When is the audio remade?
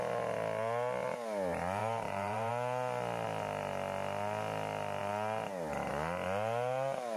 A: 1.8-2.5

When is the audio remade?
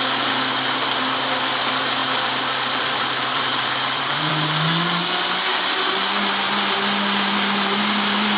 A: 2.0-4.3